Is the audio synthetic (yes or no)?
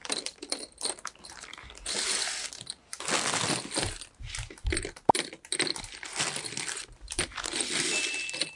no